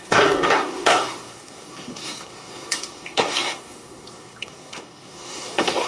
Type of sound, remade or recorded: remade